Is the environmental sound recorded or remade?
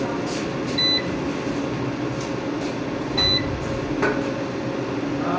recorded